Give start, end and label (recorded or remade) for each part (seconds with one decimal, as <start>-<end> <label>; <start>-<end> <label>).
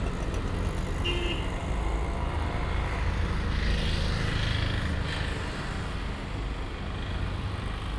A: 0.0-1.6 recorded; 1.6-2.3 remade; 2.3-8.0 recorded